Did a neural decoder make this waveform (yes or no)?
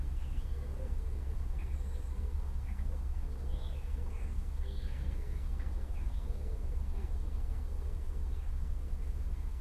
yes